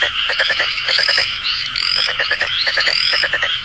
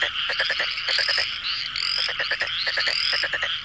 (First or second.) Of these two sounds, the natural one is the second